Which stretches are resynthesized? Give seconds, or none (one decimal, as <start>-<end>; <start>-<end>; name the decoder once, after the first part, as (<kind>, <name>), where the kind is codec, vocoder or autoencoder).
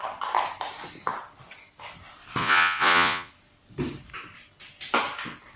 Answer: 2.4-3.3 (vocoder, Vocos)